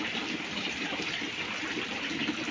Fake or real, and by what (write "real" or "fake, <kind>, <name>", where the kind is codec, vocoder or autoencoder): real